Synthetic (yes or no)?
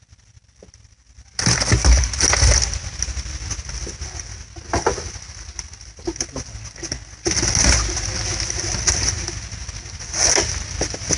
no